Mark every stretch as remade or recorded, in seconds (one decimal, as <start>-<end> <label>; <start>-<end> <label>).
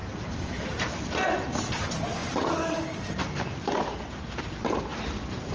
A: 0.0-1.3 remade; 1.3-5.5 recorded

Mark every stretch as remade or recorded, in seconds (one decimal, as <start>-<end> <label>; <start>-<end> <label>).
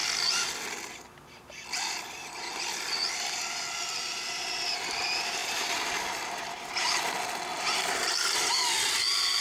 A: 0.0-5.4 recorded; 5.4-6.9 remade; 6.9-7.5 recorded; 7.5-8.4 remade; 8.4-9.4 recorded